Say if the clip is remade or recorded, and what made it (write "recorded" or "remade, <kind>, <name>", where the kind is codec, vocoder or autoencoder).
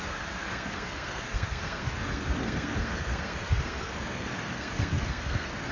remade, codec, SNAC